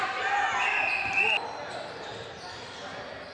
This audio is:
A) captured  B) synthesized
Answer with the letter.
A